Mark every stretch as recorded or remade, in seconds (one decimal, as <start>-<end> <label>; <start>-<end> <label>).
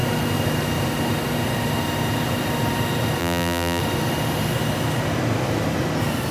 0.0-3.2 recorded; 3.2-3.8 remade; 3.8-6.3 recorded